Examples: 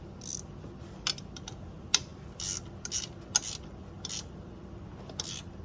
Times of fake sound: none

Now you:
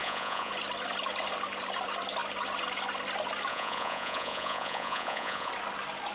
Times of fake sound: 0.0-0.5 (vocoder, Vocos); 3.5-5.5

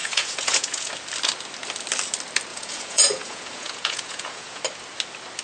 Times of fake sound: 0.0-0.9 (vocoder, Vocos); 2.5-4.6

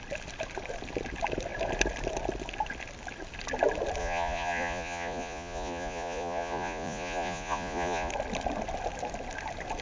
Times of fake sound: 4.0-8.1 (vocoder, Vocos)

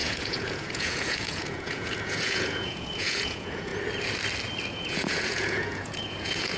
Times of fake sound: 0.0-3.7 (vocoder, Vocos); 4.7-6.6